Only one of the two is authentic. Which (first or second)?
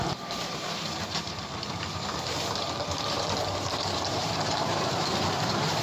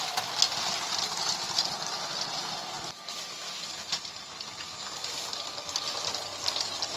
second